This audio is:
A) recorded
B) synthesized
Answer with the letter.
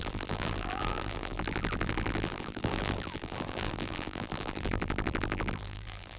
B